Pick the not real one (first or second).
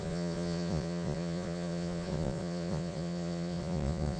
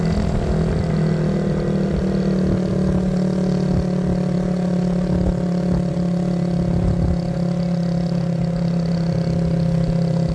first